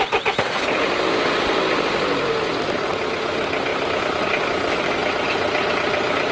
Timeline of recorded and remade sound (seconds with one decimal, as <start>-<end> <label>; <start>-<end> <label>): 0.0-6.3 recorded